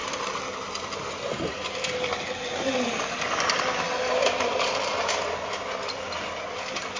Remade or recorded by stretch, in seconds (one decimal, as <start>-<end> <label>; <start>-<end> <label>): 0.0-7.0 recorded